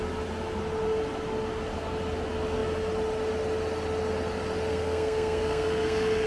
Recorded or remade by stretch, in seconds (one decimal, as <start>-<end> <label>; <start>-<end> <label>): 0.0-4.7 recorded; 4.7-6.3 remade

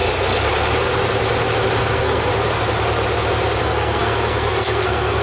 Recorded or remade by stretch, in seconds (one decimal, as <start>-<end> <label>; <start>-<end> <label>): 0.0-1.8 recorded; 1.8-2.3 remade; 2.3-3.6 recorded; 3.6-5.2 remade